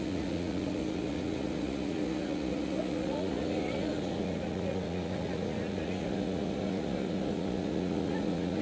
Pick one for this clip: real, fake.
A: fake